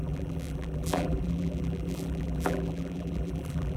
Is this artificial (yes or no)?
yes